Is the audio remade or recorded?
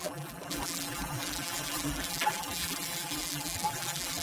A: remade